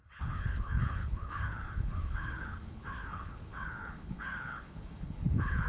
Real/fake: fake